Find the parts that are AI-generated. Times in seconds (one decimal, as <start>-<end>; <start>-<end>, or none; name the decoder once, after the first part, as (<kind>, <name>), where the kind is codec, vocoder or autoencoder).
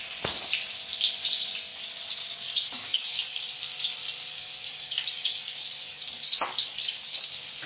1.7-3.6 (codec, DAC); 4.3-7.3